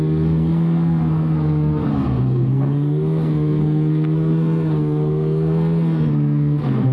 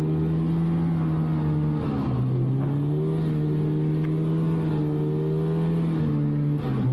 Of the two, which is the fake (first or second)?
first